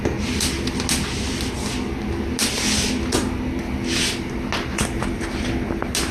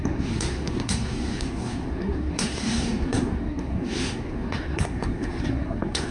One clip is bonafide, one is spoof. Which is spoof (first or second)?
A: second